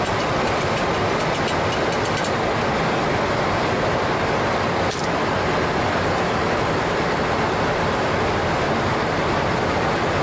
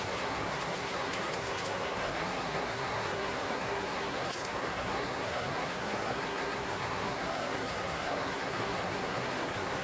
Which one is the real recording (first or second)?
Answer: first